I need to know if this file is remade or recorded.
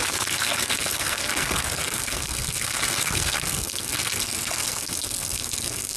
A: remade